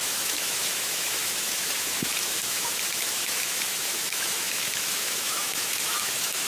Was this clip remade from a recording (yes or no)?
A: yes